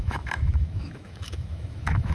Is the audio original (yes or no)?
no